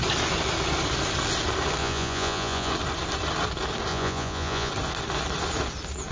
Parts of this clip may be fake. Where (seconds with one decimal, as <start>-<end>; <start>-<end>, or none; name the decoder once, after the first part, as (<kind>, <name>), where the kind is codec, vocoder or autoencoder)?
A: 1.8-2.7 (vocoder, Vocos); 3.9-4.7